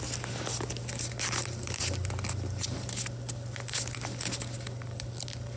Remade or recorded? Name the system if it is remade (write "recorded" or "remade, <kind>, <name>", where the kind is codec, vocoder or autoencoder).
recorded